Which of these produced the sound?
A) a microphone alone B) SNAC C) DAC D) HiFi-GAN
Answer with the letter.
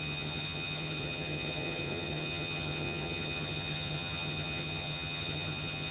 D